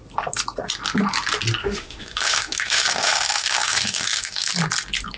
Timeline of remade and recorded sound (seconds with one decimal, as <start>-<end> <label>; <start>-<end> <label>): 0.0-1.6 recorded; 1.6-4.5 remade; 4.5-5.2 recorded